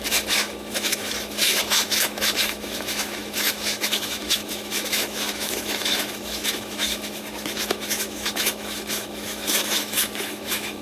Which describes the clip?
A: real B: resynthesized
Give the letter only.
B